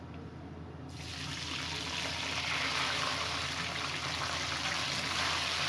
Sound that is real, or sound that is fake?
real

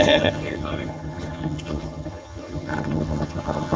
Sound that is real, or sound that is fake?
fake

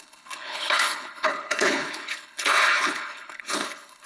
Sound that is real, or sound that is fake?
fake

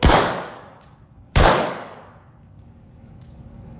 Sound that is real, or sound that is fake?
fake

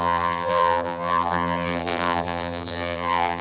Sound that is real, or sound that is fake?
fake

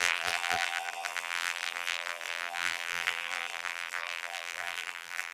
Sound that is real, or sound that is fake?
fake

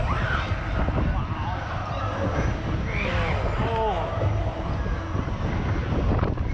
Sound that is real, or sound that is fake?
real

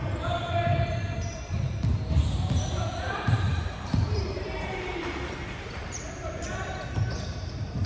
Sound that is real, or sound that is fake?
fake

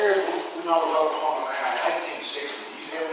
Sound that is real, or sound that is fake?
fake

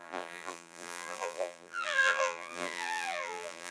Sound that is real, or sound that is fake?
fake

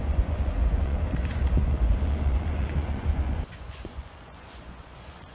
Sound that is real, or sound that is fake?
fake